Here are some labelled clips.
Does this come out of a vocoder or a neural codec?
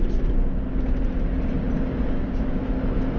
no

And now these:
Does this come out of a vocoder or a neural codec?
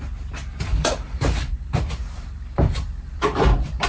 yes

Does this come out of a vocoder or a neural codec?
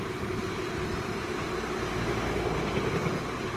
no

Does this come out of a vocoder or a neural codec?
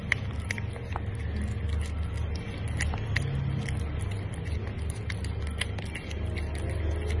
no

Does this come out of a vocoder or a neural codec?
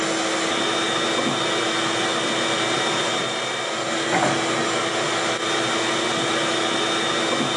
no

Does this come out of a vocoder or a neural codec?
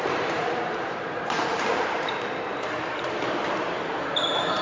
yes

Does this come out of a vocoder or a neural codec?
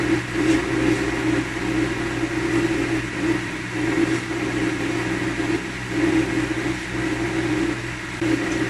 no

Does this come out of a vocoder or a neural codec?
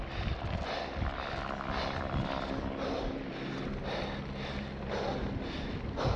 no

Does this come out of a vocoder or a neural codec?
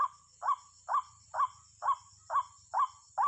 no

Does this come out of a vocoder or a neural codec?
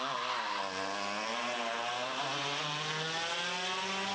no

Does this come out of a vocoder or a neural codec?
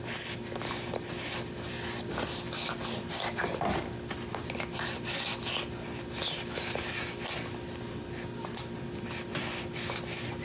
no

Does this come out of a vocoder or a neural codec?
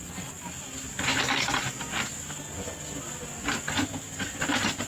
no